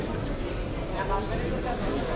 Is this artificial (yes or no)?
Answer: yes